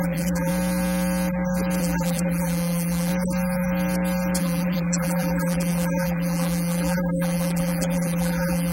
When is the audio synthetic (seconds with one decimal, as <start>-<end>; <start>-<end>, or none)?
0.0-0.5; 1.8-3.1; 4.4-8.7

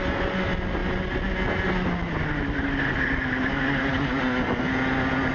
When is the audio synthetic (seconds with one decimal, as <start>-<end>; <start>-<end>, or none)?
none